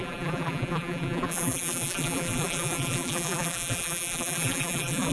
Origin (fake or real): fake